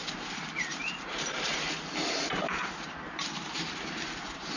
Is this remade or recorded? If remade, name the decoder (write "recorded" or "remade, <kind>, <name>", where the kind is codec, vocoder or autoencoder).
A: remade, vocoder, BigVGAN v2